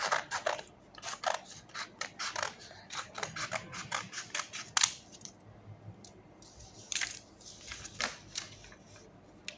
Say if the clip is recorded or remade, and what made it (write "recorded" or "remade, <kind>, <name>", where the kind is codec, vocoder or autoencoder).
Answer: recorded